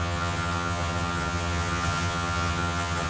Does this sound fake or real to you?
fake